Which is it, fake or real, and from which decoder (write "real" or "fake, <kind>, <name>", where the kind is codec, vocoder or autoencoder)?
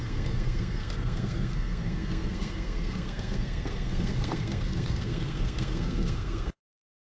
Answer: fake, codec, SNAC